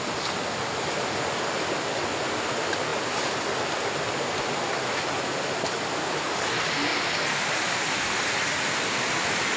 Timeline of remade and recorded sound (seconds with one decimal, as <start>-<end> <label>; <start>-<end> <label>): 0.0-9.6 recorded